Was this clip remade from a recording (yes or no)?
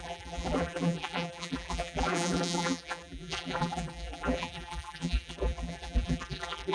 yes